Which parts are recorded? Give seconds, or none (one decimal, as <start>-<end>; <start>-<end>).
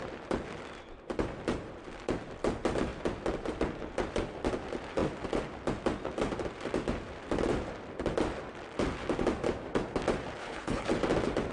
0.0-10.4; 10.9-11.5